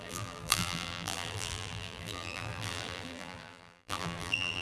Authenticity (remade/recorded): remade